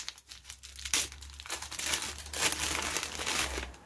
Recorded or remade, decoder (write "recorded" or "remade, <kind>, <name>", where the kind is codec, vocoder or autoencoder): recorded